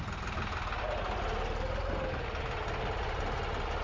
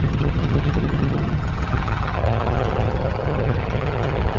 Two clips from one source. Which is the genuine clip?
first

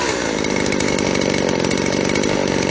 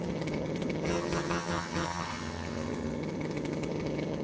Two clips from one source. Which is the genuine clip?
first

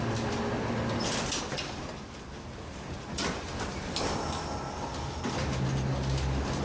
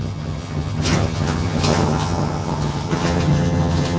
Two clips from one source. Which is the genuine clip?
first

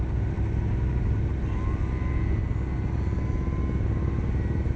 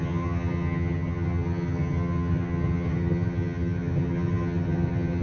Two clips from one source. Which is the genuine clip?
first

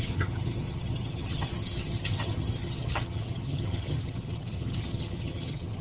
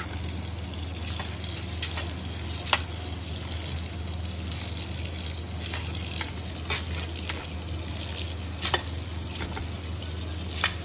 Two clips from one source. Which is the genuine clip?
second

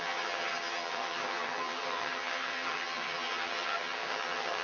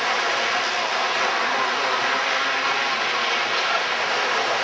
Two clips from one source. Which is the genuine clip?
second